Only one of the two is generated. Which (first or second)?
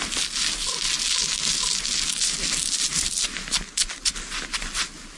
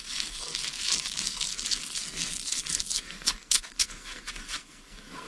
second